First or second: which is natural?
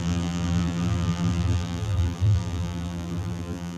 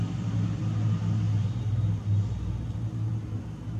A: second